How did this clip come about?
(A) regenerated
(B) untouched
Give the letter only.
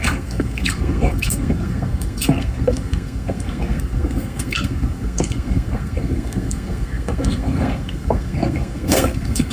A